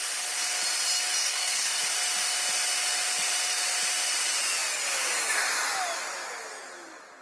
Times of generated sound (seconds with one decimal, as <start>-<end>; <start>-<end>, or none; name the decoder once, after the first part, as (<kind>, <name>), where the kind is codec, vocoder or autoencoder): 1.2-1.8 (codec, SNAC)